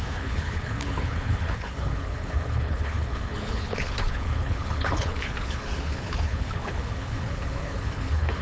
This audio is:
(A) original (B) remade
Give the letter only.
B